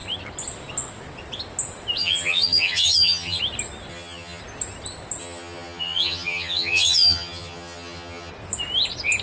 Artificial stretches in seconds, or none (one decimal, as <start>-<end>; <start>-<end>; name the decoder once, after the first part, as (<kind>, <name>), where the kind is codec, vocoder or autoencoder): 2.0-3.4 (vocoder, HiFi-GAN); 3.9-4.4; 5.2-8.3